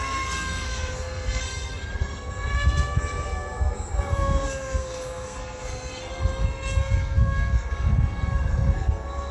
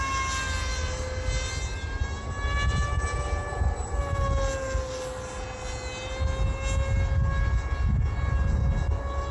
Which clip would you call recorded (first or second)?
second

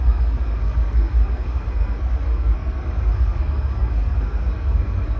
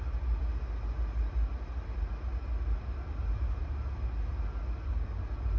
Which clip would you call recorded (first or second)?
second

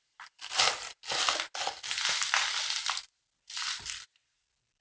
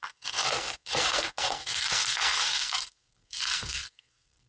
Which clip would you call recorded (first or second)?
first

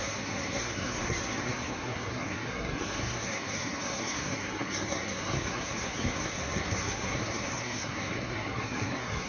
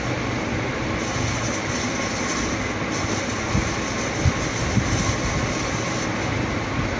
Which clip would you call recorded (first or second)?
second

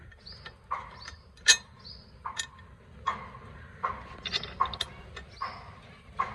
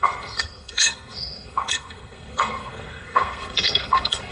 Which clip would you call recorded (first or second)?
first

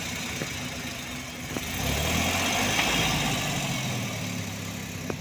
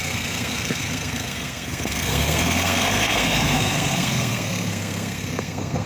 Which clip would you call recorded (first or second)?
first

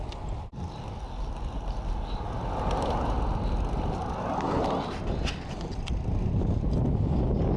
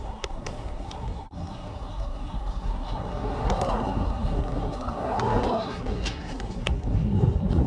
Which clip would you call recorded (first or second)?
first